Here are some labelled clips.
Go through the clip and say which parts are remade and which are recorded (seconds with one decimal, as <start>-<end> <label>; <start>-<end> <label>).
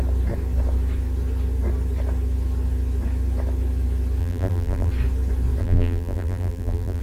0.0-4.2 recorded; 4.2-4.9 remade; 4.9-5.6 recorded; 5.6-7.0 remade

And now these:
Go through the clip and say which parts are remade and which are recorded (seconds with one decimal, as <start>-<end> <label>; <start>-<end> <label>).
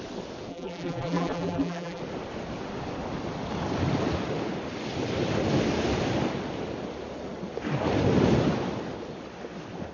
0.0-0.5 recorded; 0.5-2.0 remade; 2.0-9.9 recorded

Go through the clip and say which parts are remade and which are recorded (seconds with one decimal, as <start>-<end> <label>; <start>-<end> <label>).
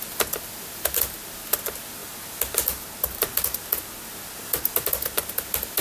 0.0-5.8 recorded